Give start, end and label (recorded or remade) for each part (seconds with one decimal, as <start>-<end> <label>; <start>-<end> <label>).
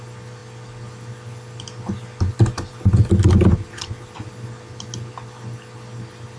0.0-6.4 recorded